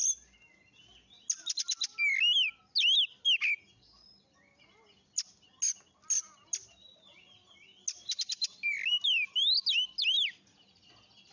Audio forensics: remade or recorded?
recorded